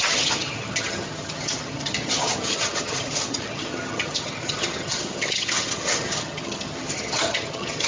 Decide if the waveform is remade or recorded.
remade